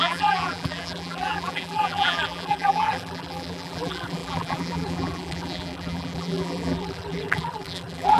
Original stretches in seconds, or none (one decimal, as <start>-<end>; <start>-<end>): none